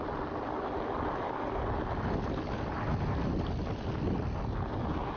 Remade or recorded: recorded